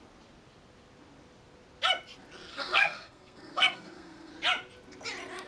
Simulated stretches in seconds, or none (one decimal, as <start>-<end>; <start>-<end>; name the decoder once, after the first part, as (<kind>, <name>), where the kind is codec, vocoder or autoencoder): 2.5-4.3 (codec, SNAC)